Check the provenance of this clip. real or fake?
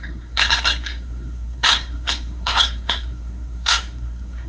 fake